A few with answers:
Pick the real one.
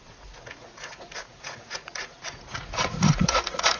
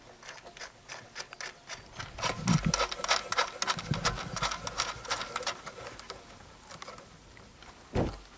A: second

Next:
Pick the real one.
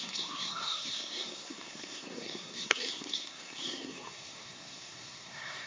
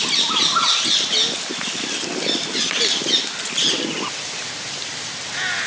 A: second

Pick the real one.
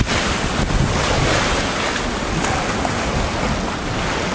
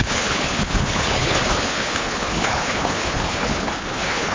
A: first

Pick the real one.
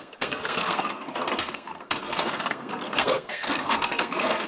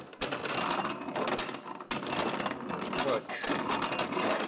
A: second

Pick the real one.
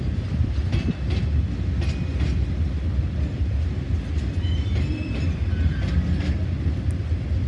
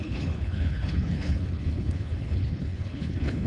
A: first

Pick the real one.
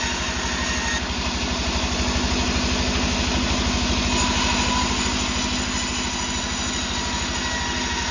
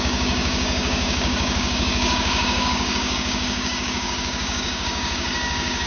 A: first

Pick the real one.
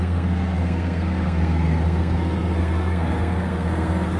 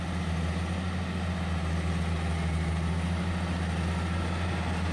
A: second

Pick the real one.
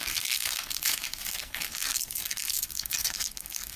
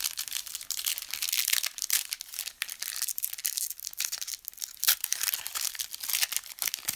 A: second